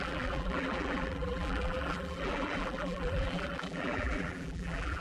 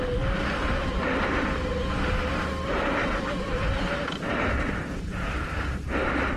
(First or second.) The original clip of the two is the second